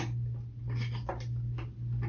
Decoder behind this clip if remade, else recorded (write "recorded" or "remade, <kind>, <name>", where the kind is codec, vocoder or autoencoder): recorded